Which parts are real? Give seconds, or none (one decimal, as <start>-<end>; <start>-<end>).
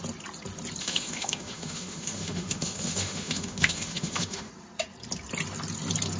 0.0-0.8; 4.5-6.2